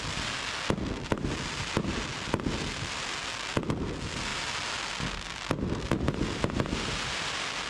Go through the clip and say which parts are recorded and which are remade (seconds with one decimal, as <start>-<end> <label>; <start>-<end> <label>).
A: 0.0-7.7 recorded